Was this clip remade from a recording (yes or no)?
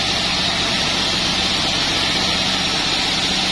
no